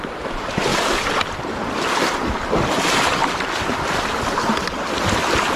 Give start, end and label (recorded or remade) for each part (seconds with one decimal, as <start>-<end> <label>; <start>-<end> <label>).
0.0-3.2 recorded; 3.2-4.2 remade; 4.2-5.6 recorded